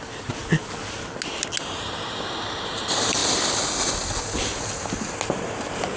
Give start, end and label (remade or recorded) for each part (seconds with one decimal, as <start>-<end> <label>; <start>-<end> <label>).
0.0-0.4 remade; 0.4-1.6 recorded; 1.6-3.2 remade; 3.2-6.0 recorded